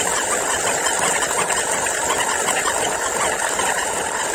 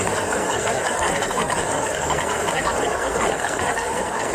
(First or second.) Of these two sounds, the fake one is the second